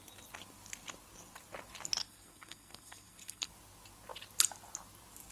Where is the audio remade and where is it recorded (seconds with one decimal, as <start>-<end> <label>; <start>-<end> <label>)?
0.0-2.0 recorded; 2.0-3.5 remade; 3.5-5.3 recorded